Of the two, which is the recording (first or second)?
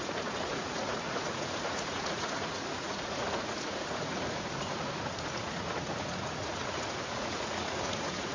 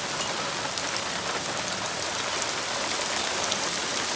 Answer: second